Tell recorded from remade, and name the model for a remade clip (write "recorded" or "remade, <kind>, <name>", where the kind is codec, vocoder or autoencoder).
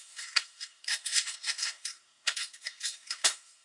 remade, codec, SNAC